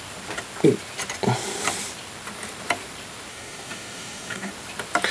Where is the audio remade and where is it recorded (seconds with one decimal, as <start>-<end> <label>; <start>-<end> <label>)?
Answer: 0.0-3.3 recorded; 3.3-4.5 remade; 4.5-5.1 recorded